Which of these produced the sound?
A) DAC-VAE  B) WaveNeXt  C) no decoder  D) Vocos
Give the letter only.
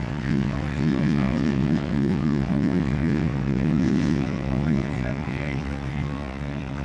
B